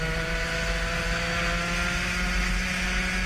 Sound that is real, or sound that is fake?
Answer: real